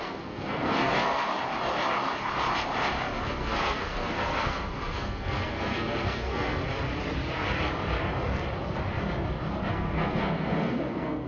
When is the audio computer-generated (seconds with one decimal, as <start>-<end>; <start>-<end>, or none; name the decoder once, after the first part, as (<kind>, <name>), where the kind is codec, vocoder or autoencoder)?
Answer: 0.0-1.3 (codec, SNAC); 3.2-6.6; 9.7-11.3